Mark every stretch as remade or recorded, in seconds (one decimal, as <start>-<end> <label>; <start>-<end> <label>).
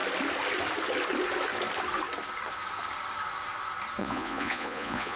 0.0-4.0 recorded; 4.0-5.2 remade